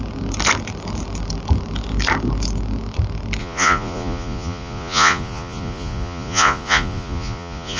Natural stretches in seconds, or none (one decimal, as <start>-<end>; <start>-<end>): 0.0-3.4